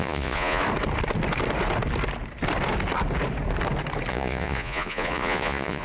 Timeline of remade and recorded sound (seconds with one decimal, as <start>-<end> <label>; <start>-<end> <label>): 0.0-0.6 remade; 0.6-4.1 recorded; 4.1-5.8 remade